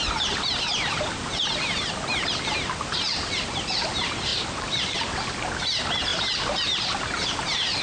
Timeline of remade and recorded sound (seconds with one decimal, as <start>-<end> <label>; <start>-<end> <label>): 0.0-7.8 recorded